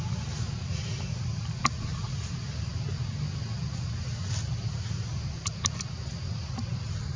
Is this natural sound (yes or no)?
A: yes